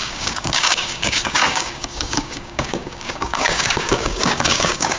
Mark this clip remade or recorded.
remade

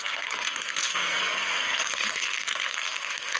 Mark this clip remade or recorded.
remade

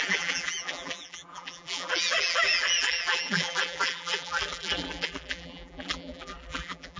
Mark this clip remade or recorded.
remade